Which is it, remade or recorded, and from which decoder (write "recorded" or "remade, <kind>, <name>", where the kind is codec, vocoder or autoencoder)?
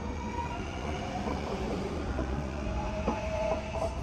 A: remade, vocoder, Vocos